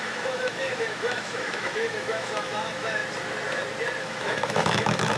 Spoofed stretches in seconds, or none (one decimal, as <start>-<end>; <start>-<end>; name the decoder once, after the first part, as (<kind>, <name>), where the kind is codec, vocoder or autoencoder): 0.0-3.0 (autoencoder, DAC-VAE); 4.0-5.2